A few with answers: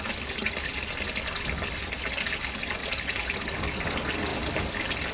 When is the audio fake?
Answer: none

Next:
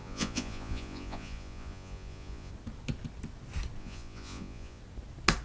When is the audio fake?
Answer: 0.0-2.5 (vocoder, Vocos); 3.8-4.8

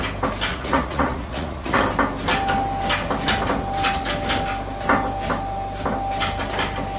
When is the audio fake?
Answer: 0.5-1.8 (vocoder, Vocos)

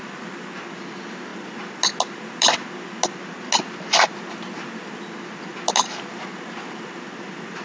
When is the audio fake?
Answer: none